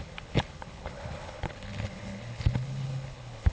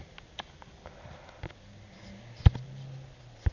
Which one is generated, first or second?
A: first